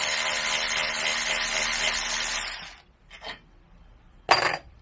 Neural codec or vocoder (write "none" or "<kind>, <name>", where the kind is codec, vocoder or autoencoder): none